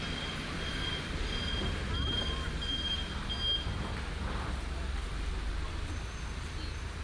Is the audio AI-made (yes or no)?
no